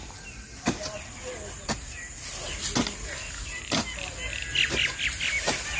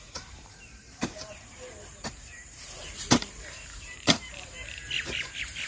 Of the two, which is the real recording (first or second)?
first